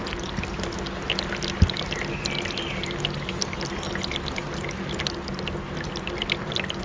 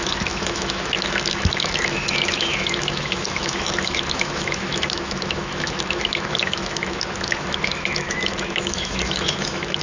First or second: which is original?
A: first